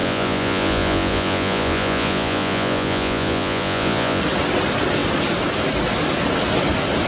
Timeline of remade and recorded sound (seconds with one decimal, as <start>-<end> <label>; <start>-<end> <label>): 0.0-4.2 remade; 4.2-7.1 recorded